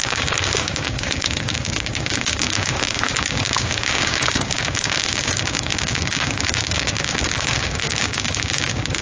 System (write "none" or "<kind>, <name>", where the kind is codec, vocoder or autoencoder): codec, DAC